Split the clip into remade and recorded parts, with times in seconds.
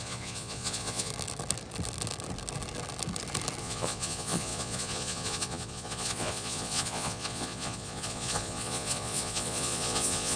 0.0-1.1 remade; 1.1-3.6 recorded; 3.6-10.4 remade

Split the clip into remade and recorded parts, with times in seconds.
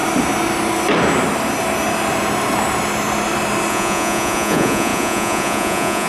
0.0-3.7 recorded; 3.7-6.1 remade